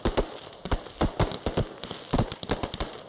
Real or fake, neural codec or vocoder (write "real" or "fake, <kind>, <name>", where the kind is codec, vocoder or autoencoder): real